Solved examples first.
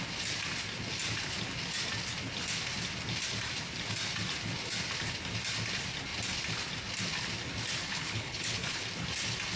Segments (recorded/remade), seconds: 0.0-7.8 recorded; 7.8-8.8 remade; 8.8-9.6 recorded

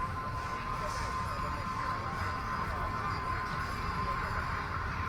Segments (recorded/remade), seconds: 0.0-0.5 remade; 0.5-3.6 recorded; 3.6-5.1 remade

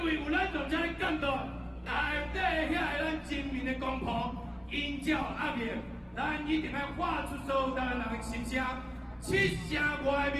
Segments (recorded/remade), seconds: 0.0-1.0 recorded; 1.0-2.4 remade; 2.4-10.4 recorded

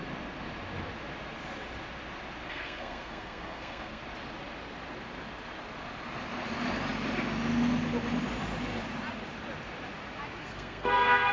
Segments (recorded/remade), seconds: 0.0-2.5 recorded; 2.5-4.0 remade; 4.0-10.4 recorded; 10.4-11.3 remade

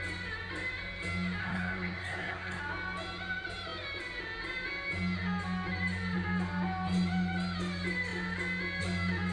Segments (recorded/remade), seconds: 0.0-1.4 recorded; 1.4-2.6 remade; 2.6-9.3 recorded

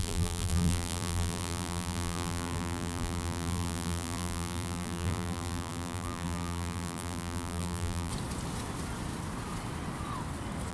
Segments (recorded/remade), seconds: 0.0-8.1 remade; 8.1-10.7 recorded

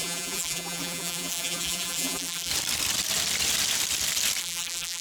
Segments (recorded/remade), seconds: 0.0-2.5 remade; 2.5-4.4 recorded; 4.4-5.0 remade

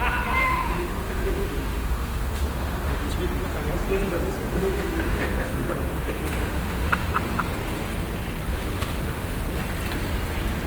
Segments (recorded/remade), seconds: 0.0-0.4 recorded; 0.4-3.1 remade; 3.1-4.5 recorded; 4.5-7.1 remade; 7.1-8.5 recorded; 8.5-9.4 remade; 9.4-10.7 recorded